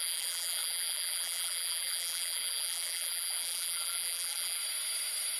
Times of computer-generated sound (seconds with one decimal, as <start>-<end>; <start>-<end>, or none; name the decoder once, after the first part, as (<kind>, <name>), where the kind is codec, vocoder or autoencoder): 0.0-4.6 (vocoder, BigVGAN v2)